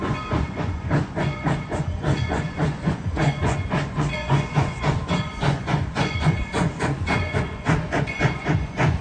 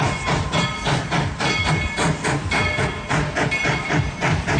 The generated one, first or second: first